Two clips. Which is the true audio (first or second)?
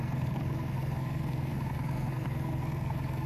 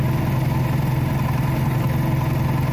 second